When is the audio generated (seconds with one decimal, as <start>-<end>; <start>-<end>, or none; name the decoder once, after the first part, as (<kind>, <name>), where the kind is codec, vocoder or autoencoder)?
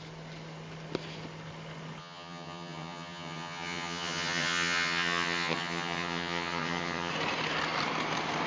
2.0-7.1 (vocoder, HiFi-GAN)